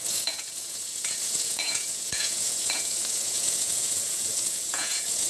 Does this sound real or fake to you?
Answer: fake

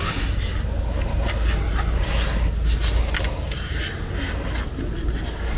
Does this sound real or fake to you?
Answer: real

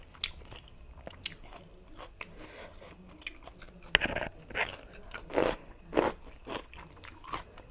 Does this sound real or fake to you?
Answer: real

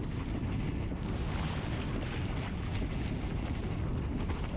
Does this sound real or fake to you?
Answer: real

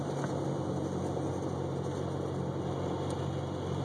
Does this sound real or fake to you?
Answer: real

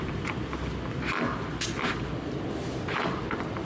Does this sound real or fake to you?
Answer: real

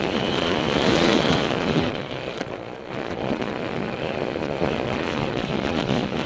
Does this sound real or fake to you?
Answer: fake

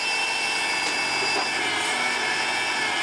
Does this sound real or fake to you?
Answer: real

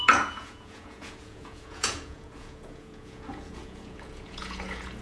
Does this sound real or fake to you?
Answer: fake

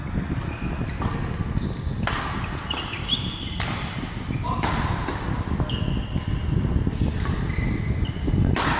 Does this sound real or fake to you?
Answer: real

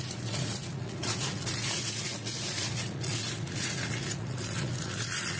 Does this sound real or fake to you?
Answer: fake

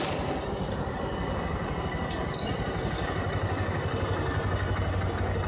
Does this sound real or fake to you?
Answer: real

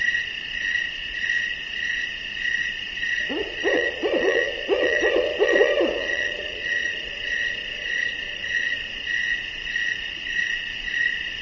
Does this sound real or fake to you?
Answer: fake